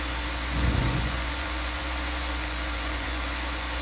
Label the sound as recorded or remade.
remade